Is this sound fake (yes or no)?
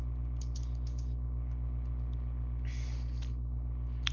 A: no